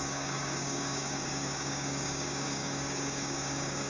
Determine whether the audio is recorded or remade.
remade